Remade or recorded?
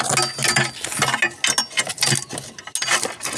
recorded